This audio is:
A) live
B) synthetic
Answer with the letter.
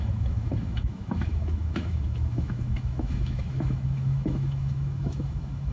B